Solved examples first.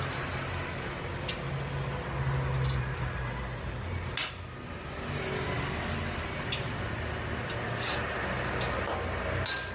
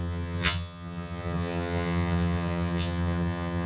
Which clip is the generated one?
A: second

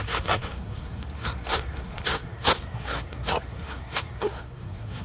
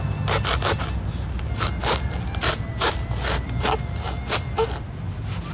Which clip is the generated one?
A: first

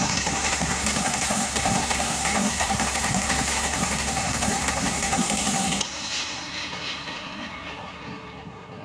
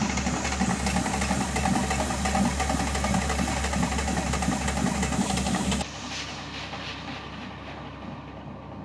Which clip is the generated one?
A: first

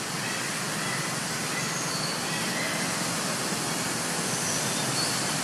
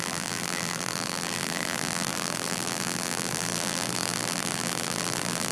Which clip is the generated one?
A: second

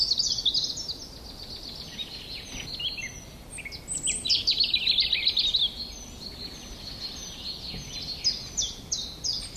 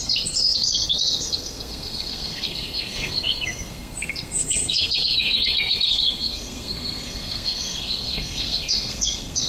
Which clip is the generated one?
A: second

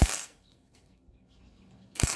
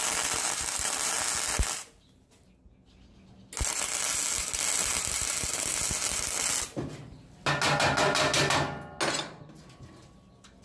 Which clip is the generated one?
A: first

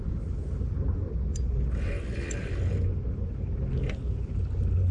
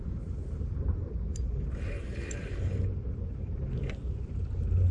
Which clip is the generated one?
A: second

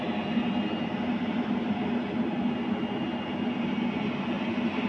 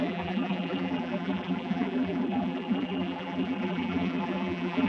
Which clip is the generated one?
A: second